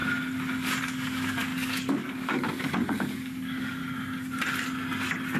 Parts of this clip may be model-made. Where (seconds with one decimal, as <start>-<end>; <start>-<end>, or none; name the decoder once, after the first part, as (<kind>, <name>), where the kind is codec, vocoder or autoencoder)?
0.8-3.8 (codec, DAC)